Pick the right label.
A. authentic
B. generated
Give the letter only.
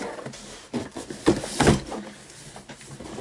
A